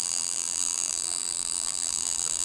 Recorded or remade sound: remade